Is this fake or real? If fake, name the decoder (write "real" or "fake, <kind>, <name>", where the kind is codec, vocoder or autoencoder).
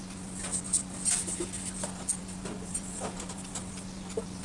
real